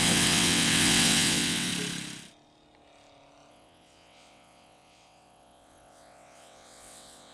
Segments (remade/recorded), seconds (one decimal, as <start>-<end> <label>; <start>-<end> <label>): 0.0-1.7 remade; 1.7-3.5 recorded; 3.5-7.3 remade